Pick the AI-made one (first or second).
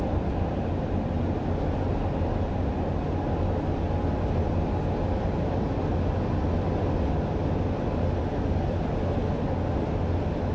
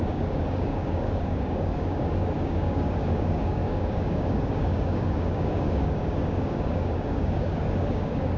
second